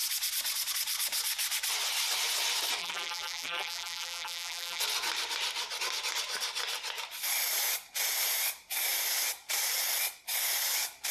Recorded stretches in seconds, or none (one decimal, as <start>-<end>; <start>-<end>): 0.0-2.8; 4.8-11.1